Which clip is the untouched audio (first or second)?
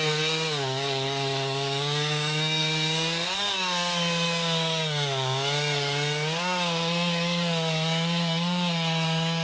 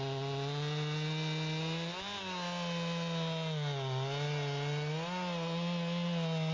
second